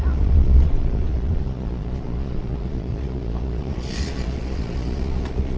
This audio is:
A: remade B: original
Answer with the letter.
A